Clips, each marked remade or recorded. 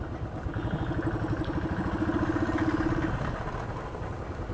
recorded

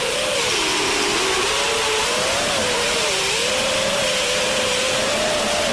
remade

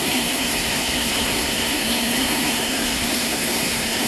remade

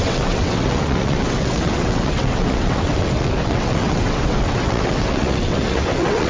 remade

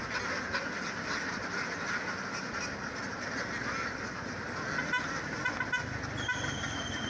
recorded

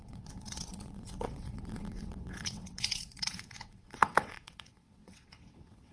remade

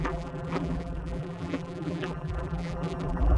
remade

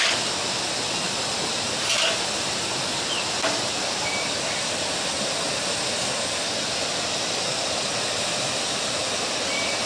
recorded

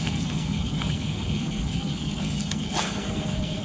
remade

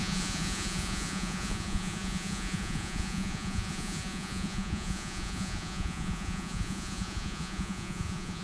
remade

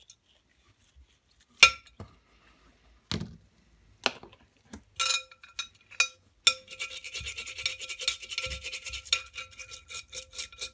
recorded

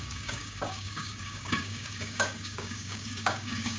remade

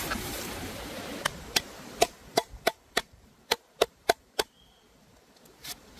remade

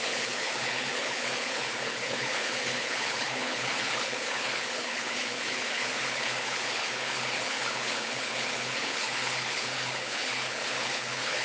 remade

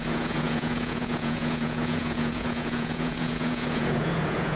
remade